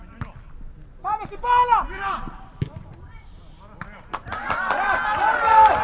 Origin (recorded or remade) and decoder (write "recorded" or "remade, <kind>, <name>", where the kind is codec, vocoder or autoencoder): recorded